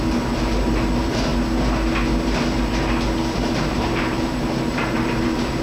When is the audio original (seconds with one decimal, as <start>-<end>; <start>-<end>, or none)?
1.3-3.7